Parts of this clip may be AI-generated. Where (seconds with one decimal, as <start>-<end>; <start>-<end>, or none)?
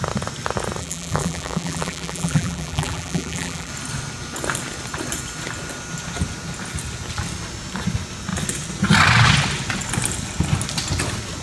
0.8-3.7